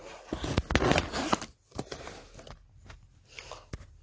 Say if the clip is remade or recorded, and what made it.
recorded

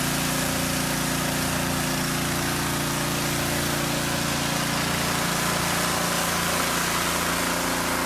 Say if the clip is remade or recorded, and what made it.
recorded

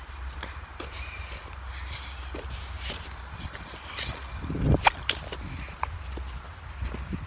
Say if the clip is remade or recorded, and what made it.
recorded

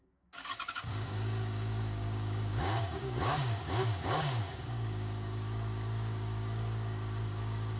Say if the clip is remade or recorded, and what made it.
remade, codec, DAC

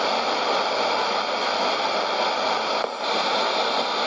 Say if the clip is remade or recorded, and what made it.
recorded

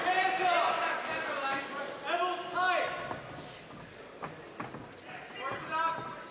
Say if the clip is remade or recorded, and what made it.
recorded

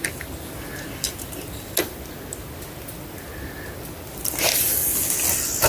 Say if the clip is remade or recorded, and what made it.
recorded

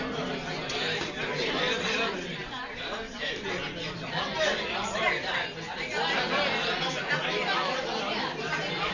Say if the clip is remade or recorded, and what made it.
recorded